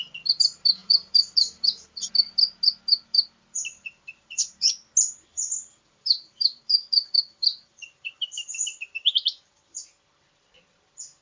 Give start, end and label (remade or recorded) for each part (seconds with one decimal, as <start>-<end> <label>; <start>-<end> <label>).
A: 0.0-0.8 recorded; 0.8-2.1 remade; 2.1-3.7 recorded; 3.7-4.7 remade; 4.7-5.3 recorded; 5.3-9.8 remade; 9.8-11.2 recorded